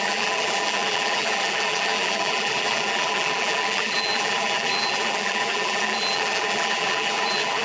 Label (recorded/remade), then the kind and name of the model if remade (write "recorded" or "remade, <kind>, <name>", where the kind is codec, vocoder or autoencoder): remade, vocoder, BigVGAN v2